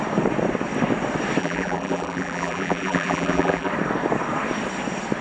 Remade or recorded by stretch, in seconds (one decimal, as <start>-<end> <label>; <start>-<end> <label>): 0.0-1.4 recorded; 1.4-3.7 remade; 3.7-5.2 recorded